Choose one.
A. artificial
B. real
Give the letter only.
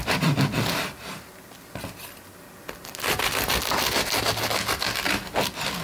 B